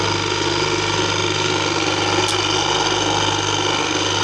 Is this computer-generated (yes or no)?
no